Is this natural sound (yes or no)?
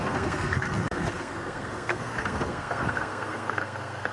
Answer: no